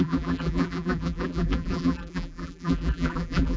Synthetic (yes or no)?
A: yes